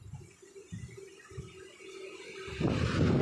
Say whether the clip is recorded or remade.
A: recorded